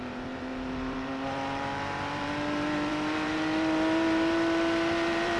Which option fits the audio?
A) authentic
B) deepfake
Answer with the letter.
B